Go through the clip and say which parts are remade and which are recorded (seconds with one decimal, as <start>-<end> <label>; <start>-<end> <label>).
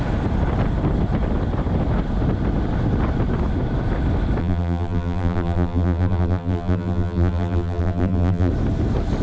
0.0-4.4 recorded; 4.4-8.5 remade; 8.5-9.2 recorded